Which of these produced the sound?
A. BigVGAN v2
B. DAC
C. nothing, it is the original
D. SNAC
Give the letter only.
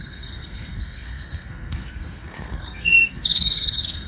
D